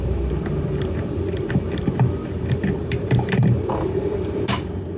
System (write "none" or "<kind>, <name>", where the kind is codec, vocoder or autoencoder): vocoder, BigVGAN v2